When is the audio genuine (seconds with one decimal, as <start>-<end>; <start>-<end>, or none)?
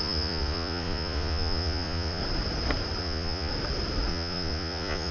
2.2-3.0; 3.5-4.1